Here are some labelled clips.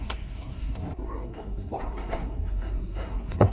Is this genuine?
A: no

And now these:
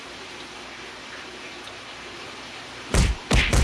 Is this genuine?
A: no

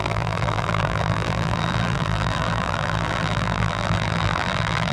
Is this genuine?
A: no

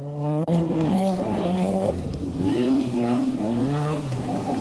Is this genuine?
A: no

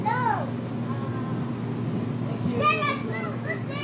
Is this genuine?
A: yes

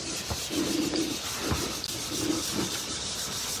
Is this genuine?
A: yes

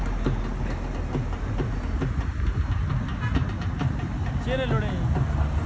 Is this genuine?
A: yes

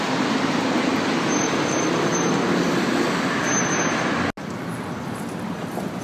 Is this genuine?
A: yes